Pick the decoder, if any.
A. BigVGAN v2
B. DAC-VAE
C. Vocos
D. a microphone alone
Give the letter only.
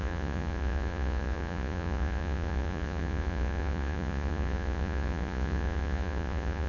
C